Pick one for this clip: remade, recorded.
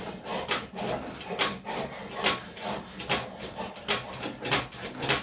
recorded